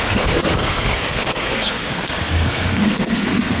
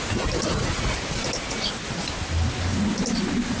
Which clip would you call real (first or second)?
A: second